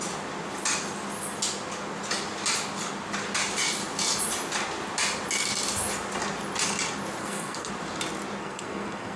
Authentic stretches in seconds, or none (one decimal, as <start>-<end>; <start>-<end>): 0.0-7.2; 7.7-8.4